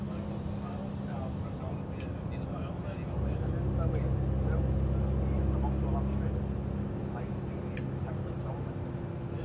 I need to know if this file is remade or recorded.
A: recorded